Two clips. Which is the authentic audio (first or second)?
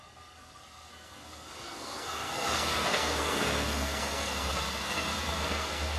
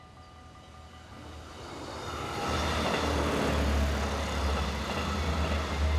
second